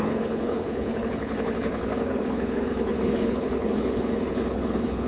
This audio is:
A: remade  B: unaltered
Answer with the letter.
A